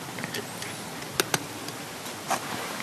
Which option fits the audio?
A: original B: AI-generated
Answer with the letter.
A